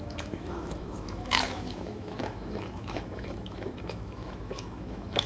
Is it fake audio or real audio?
fake